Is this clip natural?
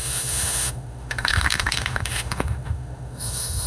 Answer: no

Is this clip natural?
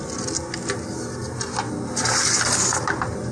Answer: yes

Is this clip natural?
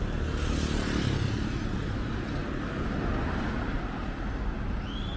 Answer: yes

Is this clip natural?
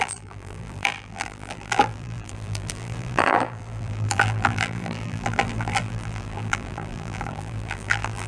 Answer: no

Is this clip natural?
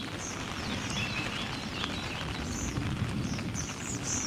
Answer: no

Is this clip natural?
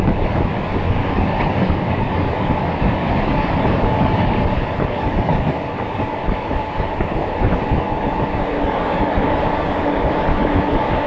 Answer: no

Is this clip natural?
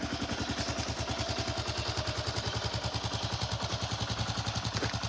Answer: yes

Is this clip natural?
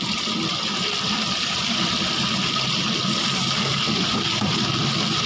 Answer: yes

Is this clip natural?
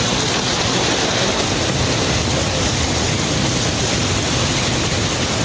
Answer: yes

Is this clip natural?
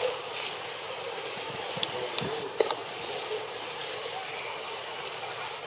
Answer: yes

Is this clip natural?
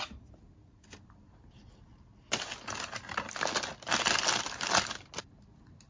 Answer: yes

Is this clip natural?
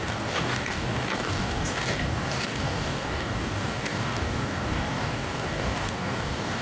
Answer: no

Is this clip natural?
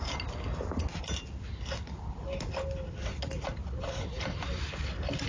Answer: yes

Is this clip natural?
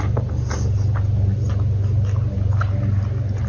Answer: yes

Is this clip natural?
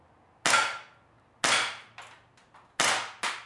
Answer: yes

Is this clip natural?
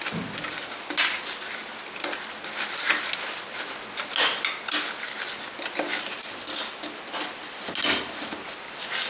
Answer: yes